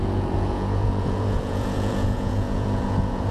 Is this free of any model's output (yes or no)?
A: no